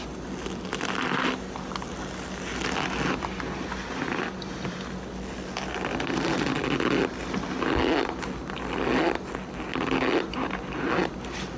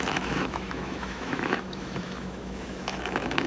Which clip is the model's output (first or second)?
second